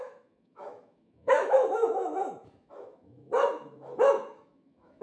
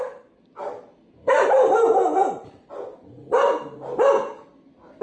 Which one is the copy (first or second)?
first